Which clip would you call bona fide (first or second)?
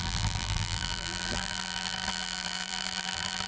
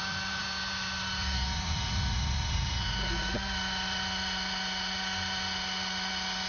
second